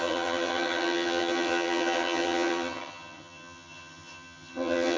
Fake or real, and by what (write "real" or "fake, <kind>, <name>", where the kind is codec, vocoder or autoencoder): fake, vocoder, HiFi-GAN